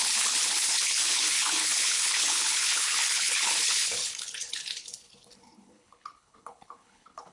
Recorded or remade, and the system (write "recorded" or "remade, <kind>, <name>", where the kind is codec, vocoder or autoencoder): remade, codec, HILCodec